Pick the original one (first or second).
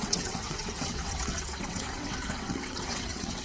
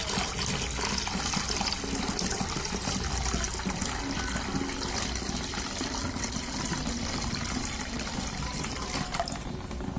second